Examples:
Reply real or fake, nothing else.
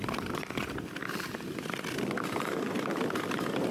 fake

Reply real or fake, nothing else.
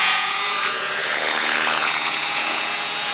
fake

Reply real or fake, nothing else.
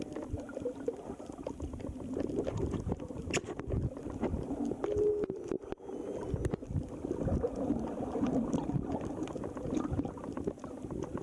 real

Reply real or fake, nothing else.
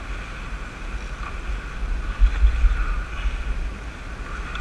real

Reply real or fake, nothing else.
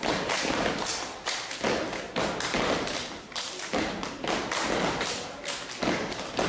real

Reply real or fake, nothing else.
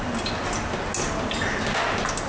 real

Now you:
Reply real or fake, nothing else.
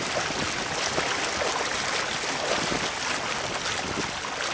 real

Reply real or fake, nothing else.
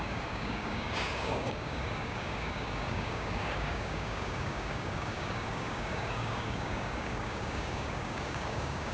fake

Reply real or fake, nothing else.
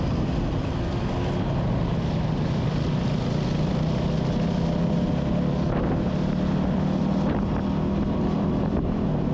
real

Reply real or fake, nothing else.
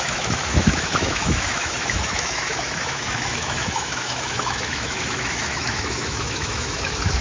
fake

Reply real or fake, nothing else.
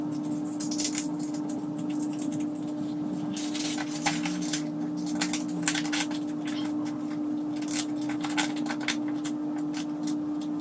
real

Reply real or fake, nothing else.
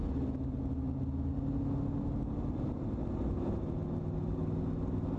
real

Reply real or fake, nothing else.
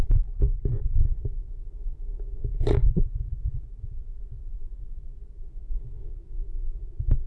real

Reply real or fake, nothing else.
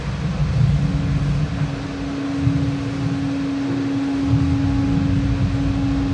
real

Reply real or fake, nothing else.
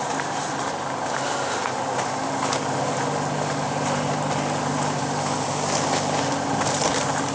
real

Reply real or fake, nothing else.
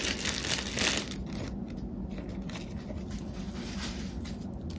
real